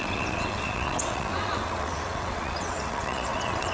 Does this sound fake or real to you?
fake